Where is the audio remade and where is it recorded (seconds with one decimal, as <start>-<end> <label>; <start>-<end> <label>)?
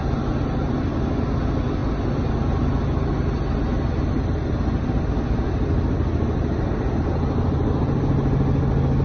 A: 0.0-9.0 recorded